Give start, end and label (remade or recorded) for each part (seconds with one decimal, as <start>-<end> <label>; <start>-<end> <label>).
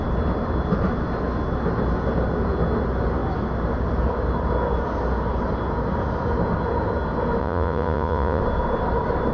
0.0-7.4 recorded; 7.4-8.4 remade; 8.4-9.3 recorded